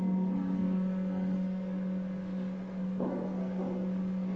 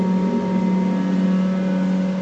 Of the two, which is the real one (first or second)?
second